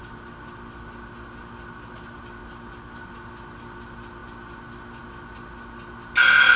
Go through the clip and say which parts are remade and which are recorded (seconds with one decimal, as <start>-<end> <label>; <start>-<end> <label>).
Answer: 0.0-6.6 recorded